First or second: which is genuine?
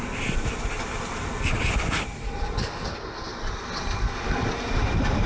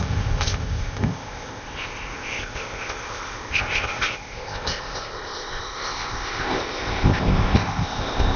first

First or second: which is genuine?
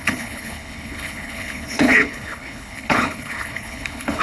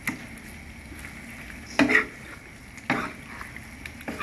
second